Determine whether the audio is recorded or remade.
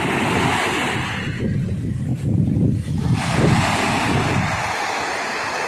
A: recorded